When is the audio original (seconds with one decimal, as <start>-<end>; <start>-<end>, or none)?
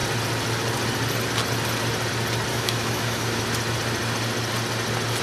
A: 0.0-2.5; 3.4-5.2